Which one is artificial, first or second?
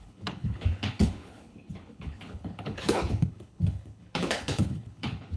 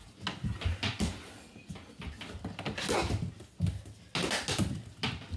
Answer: first